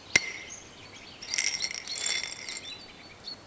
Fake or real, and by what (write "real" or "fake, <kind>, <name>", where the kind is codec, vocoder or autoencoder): real